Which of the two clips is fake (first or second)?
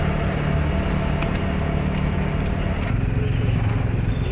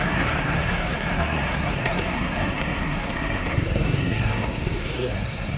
second